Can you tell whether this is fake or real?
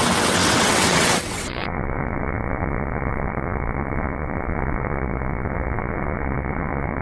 fake